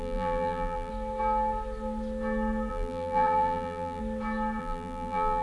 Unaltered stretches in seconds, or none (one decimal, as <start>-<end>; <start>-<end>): 0.9-2.7; 4.0-4.6